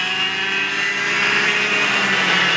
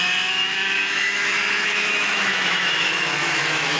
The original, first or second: first